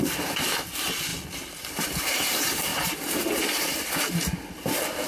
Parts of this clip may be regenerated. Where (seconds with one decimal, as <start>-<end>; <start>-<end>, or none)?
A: 0.0-1.1; 1.9-2.7; 3.2-5.1

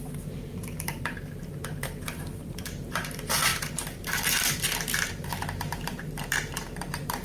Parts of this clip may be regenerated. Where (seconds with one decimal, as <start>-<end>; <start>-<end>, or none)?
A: 0.0-7.2